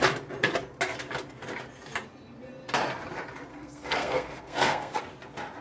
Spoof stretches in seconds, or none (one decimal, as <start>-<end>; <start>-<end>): 3.5-5.0